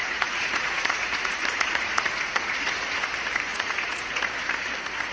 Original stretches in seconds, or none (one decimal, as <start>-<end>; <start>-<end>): 3.1-3.5; 4.2-5.1